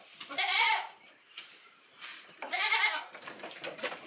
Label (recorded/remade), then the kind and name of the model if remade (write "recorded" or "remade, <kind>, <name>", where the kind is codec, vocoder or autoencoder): remade, vocoder, BigVGAN v2